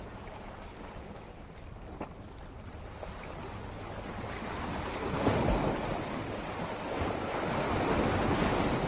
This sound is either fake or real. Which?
real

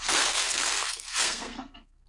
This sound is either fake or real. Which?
fake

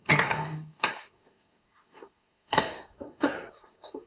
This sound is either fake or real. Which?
fake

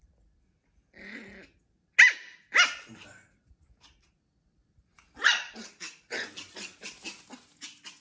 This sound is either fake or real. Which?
real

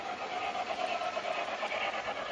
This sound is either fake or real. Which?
real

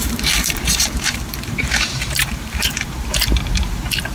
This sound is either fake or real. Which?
fake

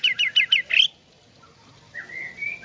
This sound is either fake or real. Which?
real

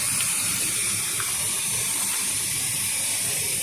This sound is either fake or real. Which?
fake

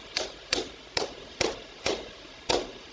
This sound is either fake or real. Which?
fake